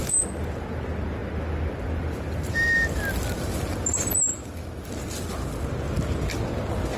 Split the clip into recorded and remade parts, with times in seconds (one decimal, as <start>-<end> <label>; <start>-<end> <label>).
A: 0.0-4.3 recorded; 4.3-4.9 remade; 4.9-7.0 recorded